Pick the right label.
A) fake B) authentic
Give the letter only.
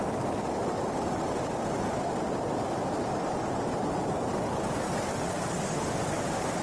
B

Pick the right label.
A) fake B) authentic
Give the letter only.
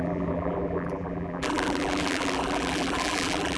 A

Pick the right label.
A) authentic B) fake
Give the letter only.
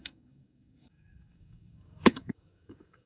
B